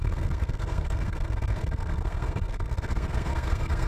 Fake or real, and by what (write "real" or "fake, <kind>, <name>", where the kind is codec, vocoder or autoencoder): fake, codec, SNAC